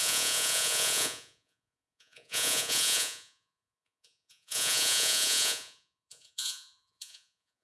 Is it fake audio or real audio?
fake